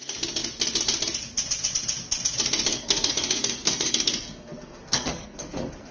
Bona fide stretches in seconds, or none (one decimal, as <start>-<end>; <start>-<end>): 0.0-2.7